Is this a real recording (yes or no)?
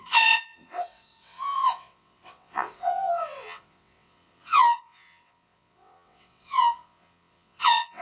no